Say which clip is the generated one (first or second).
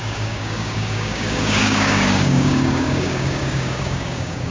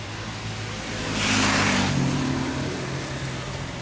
first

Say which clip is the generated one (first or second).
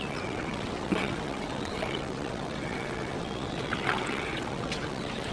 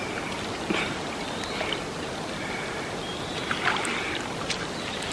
first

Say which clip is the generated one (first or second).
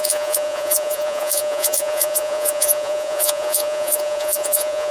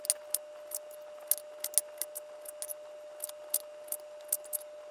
first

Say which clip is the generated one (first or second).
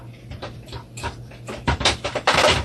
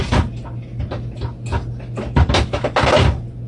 first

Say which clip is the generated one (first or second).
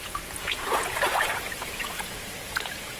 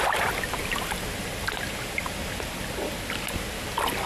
first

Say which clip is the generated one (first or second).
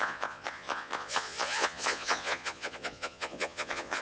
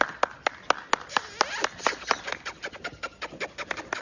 first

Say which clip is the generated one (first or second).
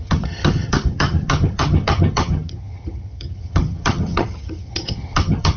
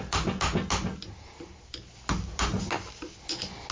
first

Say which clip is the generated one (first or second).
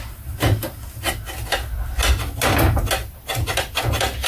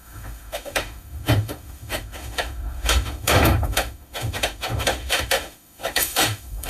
second